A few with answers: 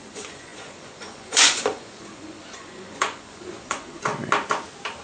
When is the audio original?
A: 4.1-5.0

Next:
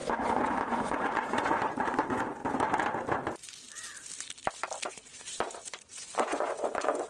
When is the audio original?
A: 2.4-4.9

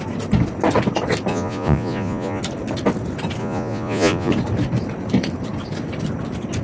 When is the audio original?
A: 0.0-1.3; 2.4-3.4; 4.3-6.6

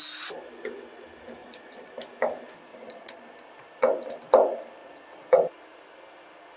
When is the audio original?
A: 0.0-1.4; 2.0-2.7; 3.2-6.6

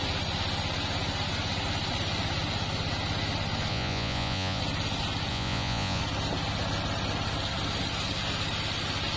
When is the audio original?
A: 0.0-3.7; 4.6-5.3; 6.0-9.2

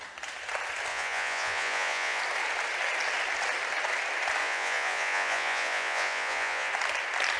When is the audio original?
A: 0.0-0.9; 2.2-4.4; 6.7-7.4

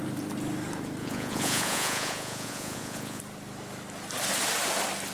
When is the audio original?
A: 0.0-1.0; 3.2-5.1

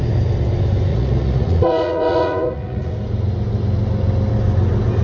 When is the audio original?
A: 0.0-0.9; 2.9-5.0